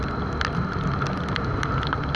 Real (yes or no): yes